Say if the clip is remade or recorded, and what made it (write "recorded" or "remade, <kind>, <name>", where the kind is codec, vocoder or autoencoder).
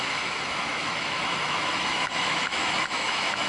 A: remade, autoencoder, DAC-VAE